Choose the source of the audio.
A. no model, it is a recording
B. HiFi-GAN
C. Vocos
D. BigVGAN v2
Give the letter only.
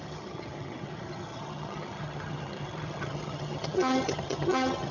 B